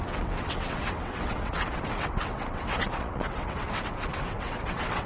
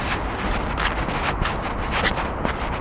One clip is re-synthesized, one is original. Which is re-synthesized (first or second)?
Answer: first